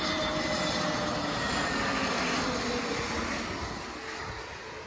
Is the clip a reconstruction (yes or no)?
no